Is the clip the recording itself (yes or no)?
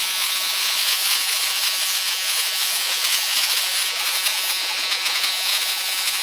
no